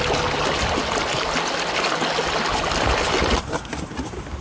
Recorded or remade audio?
recorded